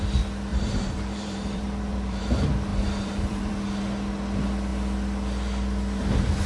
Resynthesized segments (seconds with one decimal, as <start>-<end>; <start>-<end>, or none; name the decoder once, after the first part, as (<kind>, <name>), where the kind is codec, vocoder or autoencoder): 0.5-2.2 (vocoder, BigVGAN v2); 2.7-3.5